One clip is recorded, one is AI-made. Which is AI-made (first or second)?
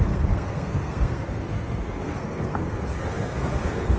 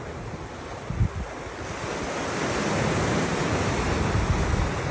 first